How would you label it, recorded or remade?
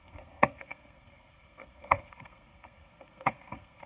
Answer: remade